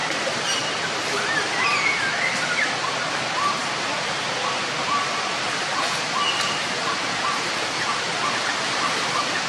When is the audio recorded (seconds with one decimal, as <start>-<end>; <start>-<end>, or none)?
0.8-9.5